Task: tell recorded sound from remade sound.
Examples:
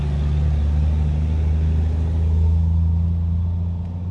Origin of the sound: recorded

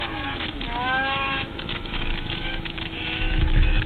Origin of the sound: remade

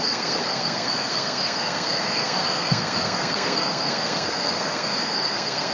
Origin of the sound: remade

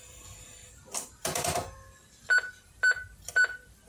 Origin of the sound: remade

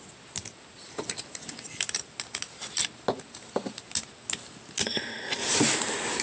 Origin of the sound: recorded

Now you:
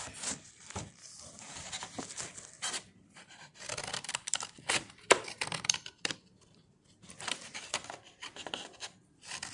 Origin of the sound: remade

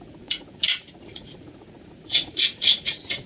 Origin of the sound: remade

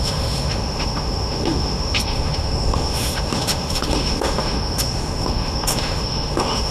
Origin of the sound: remade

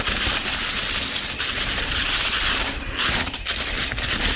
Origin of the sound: recorded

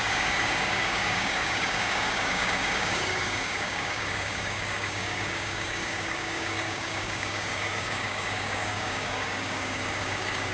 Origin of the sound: remade